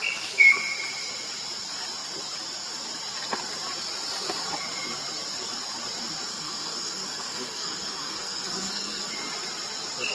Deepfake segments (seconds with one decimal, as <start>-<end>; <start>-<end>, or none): 6.3-9.1